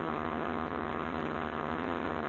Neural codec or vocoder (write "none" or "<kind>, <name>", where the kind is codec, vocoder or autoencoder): vocoder, HiFi-GAN